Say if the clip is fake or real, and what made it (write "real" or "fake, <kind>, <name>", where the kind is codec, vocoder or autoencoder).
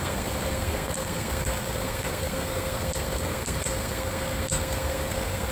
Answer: fake, codec, SNAC